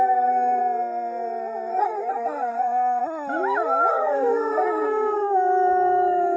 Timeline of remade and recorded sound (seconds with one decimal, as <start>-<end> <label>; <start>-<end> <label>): 0.0-0.6 remade; 0.6-1.7 recorded; 1.7-3.0 remade; 3.0-3.9 recorded; 3.9-6.4 remade